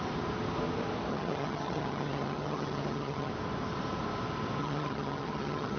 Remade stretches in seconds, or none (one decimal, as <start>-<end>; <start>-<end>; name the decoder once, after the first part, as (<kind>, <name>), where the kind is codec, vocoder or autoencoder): 1.1-3.3 (vocoder, HiFi-GAN); 4.6-5.8